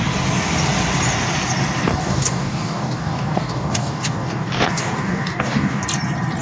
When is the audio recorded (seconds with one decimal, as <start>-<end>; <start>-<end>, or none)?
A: 0.0-2.0; 5.8-6.4